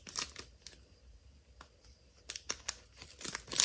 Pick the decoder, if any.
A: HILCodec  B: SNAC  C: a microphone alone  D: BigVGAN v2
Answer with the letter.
C